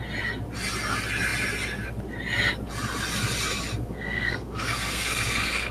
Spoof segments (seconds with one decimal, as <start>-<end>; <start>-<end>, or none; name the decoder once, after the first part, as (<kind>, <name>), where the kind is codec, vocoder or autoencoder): 3.8-5.7 (codec, SNAC)